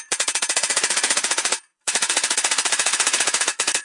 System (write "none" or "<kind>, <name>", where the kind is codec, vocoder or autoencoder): vocoder, Vocos